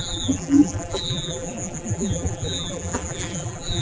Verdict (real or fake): fake